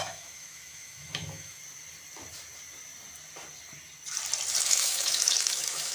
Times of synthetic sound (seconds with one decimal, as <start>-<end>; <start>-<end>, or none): 0.0-1.6; 4.6-5.9